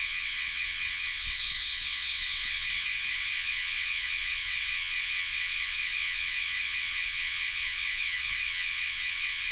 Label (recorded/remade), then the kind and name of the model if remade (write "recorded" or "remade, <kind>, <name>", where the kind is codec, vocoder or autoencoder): remade, vocoder, WaveNeXt